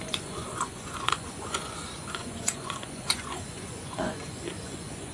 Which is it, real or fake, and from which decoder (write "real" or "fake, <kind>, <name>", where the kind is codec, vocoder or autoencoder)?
fake, vocoder, Vocos